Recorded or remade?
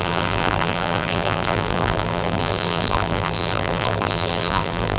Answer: remade